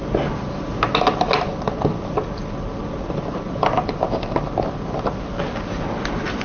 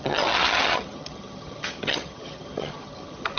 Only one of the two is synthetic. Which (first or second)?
second